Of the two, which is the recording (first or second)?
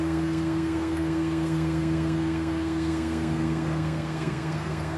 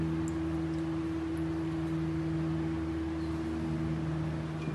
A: second